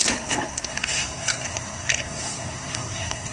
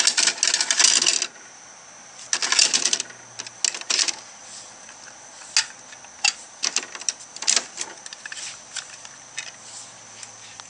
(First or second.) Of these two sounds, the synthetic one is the first